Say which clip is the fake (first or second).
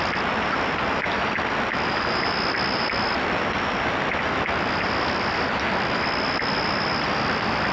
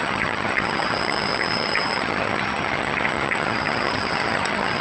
second